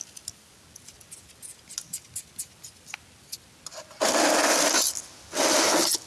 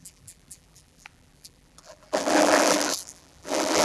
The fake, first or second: second